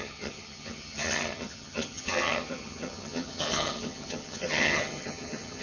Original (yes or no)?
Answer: no